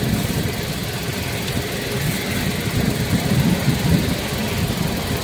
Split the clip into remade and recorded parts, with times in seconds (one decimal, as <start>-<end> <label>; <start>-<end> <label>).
0.0-5.2 recorded